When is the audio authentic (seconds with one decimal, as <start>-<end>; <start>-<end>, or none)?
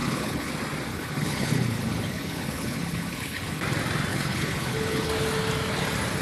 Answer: 0.5-0.9; 3.6-4.1; 5.1-6.2